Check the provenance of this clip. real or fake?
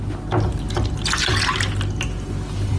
real